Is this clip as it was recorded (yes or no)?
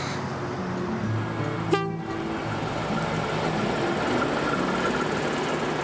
yes